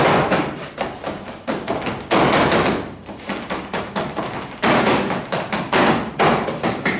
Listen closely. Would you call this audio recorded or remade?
recorded